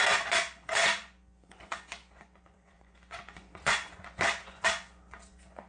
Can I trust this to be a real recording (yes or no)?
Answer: no